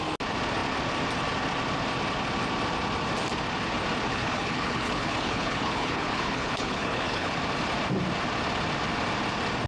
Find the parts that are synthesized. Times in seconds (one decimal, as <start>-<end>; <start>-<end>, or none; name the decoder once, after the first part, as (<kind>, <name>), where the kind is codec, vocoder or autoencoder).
4.1-7.4 (codec, HILCodec)